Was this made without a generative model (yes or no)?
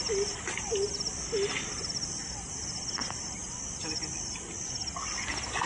yes